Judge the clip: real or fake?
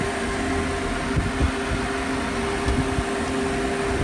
real